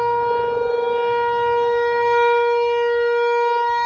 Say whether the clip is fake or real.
fake